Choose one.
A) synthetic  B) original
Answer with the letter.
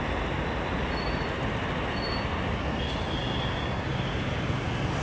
B